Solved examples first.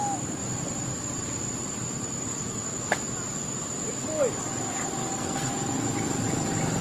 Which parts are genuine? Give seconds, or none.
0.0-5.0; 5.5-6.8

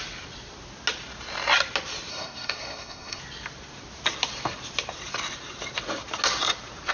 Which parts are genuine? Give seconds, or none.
0.0-2.1; 3.2-6.9